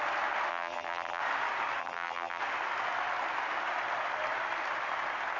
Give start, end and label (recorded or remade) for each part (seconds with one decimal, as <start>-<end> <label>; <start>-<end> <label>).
0.0-0.5 recorded; 0.5-1.2 remade; 1.2-1.8 recorded; 1.8-2.4 remade; 2.4-5.4 recorded